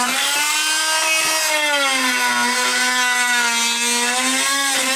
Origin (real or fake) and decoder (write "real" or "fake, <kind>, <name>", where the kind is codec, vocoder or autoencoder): real